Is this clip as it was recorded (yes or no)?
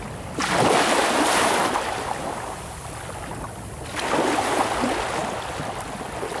yes